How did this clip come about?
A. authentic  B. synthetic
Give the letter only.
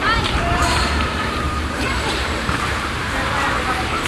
B